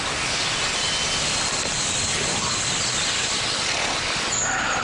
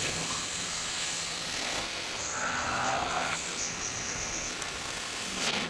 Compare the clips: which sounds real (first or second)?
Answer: first